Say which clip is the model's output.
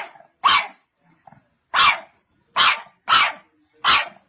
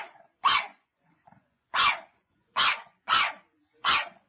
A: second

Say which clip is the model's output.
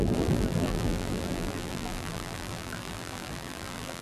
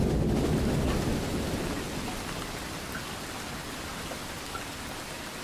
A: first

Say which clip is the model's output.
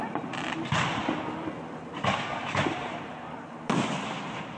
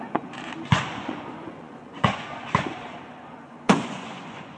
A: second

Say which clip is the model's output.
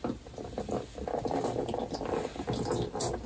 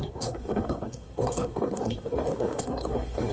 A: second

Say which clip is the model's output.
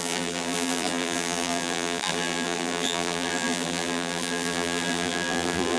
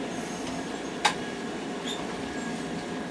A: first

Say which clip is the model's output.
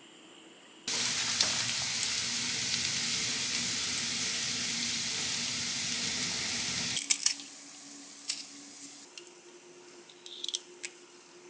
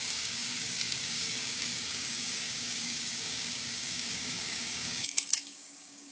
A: second